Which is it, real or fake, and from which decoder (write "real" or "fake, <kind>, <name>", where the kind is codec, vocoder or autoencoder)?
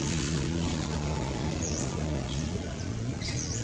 fake, vocoder, Vocos